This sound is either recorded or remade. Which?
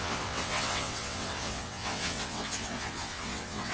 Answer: remade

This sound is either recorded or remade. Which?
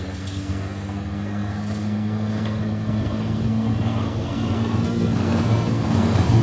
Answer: remade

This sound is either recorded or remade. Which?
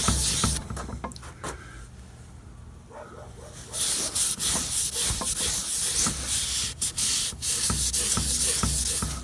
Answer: recorded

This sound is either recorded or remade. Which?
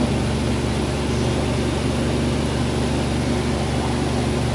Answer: recorded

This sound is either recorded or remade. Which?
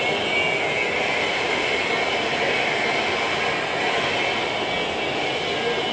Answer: recorded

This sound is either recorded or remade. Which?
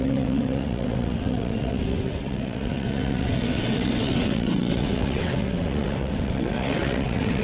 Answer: remade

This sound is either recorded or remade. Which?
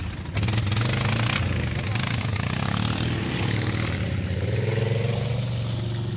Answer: recorded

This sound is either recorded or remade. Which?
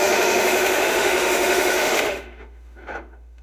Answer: remade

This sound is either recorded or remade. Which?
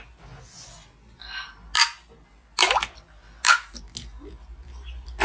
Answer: recorded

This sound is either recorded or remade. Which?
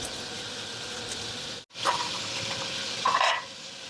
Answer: recorded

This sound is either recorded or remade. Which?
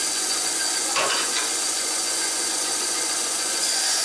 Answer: remade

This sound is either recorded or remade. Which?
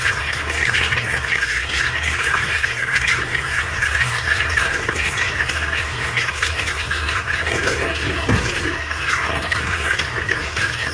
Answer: remade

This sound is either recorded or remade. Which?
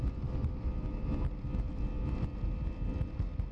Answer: recorded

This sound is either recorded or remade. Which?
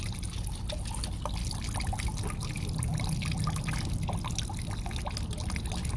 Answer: recorded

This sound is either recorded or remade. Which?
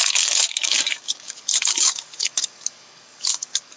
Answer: remade